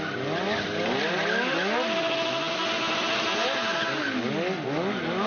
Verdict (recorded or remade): recorded